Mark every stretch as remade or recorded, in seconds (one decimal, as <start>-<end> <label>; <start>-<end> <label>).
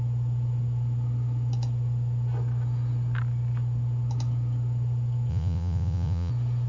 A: 0.0-5.3 recorded; 5.3-6.3 remade; 6.3-6.7 recorded